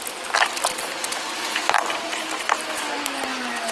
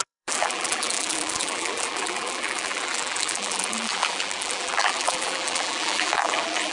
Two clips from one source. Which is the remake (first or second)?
second